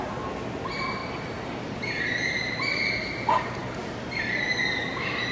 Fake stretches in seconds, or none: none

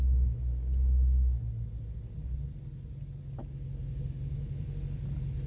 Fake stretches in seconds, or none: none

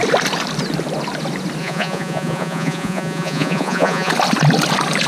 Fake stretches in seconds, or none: 1.6-4.1 (vocoder, Vocos)

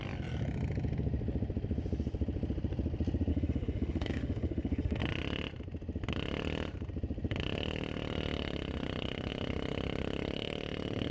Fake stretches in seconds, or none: 3.3-5.0 (autoencoder, DAC-VAE)

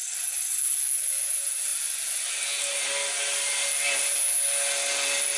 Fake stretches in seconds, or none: none